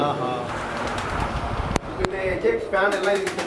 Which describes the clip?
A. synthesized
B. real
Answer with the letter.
A